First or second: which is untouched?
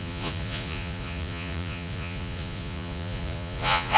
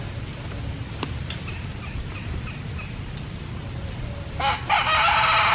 second